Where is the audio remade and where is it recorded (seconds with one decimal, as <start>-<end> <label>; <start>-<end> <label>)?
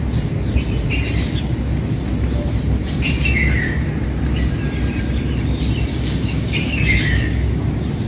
0.0-5.9 recorded; 5.9-7.6 remade; 7.6-8.1 recorded